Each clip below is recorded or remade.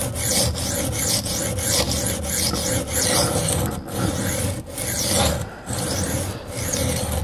recorded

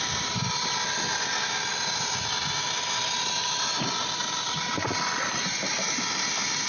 recorded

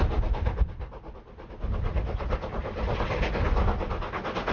recorded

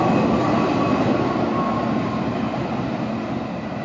recorded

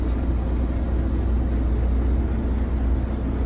recorded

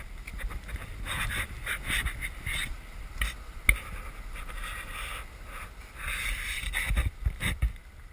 recorded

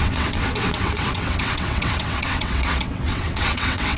remade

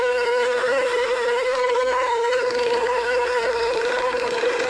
remade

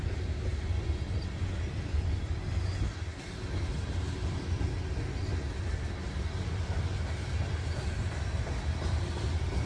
recorded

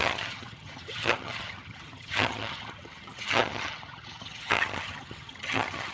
remade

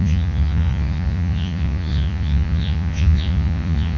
remade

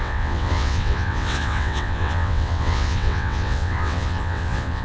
remade